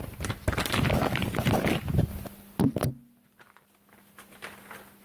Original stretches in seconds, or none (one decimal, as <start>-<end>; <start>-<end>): 0.0-5.0